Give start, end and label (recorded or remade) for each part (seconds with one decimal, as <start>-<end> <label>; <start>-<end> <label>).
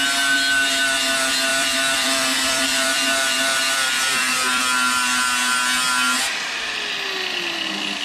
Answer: 0.0-1.5 recorded; 1.5-4.6 remade; 4.6-8.0 recorded